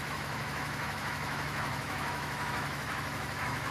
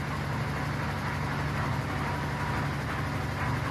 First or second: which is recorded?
second